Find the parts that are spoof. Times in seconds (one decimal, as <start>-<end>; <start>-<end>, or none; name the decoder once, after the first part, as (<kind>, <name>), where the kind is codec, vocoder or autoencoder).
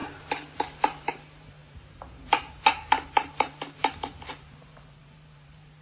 0.8-5.8 (vocoder, BigVGAN v2)